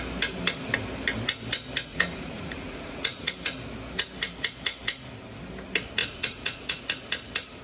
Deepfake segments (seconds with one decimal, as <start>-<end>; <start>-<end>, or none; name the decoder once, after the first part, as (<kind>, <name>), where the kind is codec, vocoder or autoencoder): 1.9-3.3 (vocoder, Vocos); 6.0-6.8